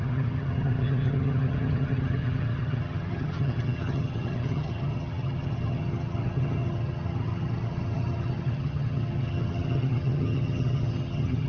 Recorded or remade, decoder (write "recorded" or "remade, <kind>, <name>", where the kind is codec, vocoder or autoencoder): remade, vocoder, HiFi-GAN